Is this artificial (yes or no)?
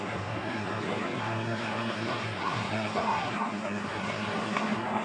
yes